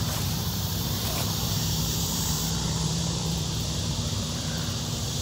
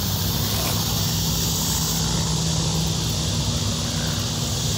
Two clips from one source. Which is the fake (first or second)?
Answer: first